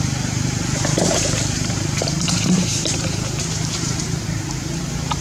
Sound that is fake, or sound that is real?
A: fake